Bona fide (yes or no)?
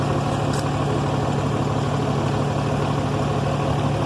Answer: yes